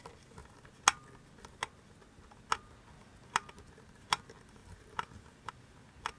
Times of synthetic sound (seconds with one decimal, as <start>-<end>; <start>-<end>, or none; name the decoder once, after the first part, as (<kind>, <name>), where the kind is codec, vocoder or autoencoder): 4.6-5.5 (vocoder, BigVGAN v2)